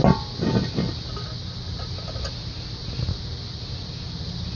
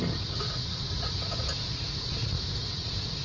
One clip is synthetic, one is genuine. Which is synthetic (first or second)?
second